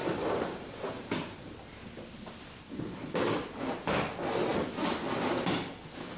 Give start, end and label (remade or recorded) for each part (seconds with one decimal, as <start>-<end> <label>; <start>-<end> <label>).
0.0-3.7 remade; 3.7-4.5 recorded; 4.5-5.7 remade; 5.7-6.2 recorded